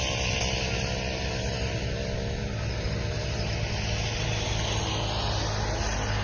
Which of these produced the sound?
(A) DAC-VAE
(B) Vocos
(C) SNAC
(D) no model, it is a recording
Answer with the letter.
D